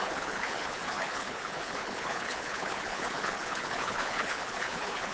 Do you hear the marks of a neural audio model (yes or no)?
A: yes